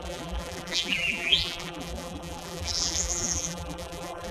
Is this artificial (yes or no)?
yes